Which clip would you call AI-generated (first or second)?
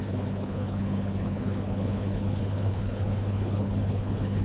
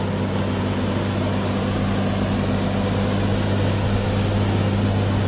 first